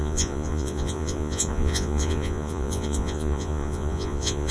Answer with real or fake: fake